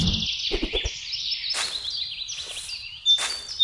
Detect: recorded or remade recorded